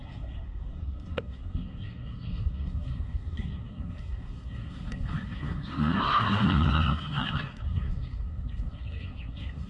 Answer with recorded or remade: remade